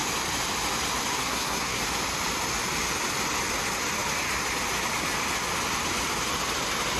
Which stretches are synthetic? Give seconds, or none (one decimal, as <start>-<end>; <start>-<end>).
1.1-1.8